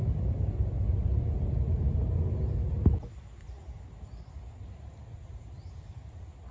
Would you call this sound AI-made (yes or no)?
no